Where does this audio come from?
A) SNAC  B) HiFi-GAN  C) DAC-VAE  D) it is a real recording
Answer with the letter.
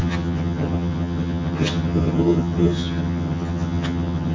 B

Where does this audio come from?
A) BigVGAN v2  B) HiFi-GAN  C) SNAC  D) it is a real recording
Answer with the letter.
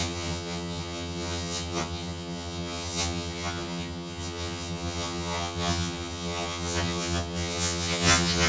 B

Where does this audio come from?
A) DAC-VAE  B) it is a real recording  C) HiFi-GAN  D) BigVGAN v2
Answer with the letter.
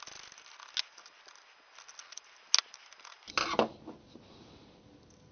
B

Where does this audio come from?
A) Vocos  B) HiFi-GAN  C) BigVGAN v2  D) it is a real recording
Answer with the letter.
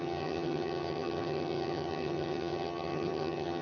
B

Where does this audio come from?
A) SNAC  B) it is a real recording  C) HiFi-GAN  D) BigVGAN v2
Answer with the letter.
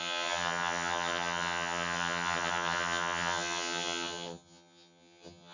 C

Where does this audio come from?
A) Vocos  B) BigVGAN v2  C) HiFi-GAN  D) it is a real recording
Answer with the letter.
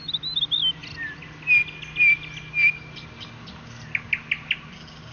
D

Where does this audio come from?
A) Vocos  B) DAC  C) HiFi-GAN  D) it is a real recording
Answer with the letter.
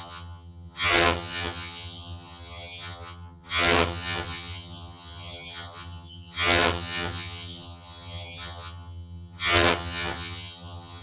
C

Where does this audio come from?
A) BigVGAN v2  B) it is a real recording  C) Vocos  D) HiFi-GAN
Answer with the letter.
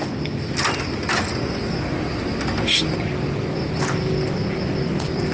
B